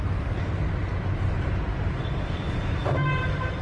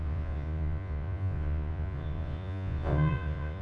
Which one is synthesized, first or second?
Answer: second